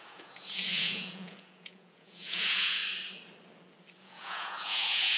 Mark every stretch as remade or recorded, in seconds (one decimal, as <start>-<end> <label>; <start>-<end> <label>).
0.0-2.8 remade; 2.8-4.0 recorded; 4.0-5.2 remade